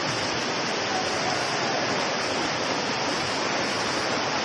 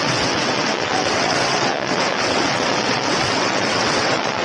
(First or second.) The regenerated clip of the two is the second